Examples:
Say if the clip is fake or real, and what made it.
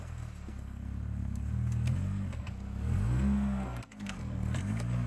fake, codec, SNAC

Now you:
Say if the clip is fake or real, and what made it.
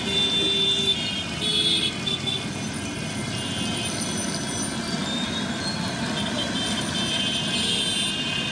real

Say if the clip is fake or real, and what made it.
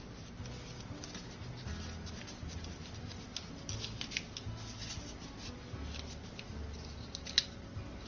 real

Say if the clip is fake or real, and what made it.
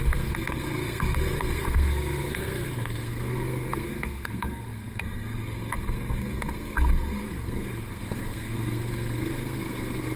fake, codec, SNAC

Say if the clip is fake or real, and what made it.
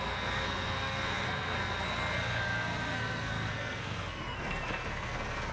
fake, codec, SNAC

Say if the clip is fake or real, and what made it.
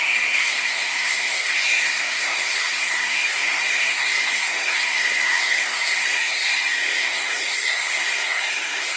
fake, codec, SNAC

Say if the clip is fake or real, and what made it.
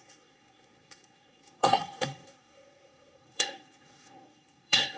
fake, codec, SNAC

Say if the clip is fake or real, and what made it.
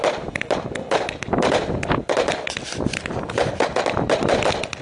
real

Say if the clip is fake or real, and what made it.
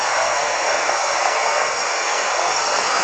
fake, codec, SNAC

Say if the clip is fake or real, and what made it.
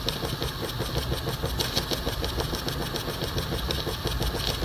real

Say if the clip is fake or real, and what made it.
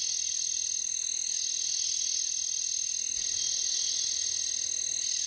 real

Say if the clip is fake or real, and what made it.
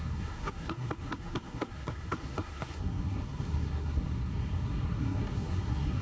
fake, codec, SNAC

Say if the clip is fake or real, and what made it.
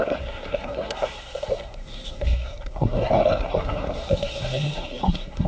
fake, codec, SNAC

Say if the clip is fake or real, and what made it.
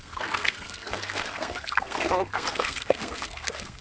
fake, codec, SNAC